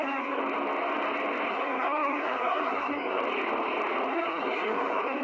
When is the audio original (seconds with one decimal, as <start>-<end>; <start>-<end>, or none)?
0.4-1.5; 3.2-4.1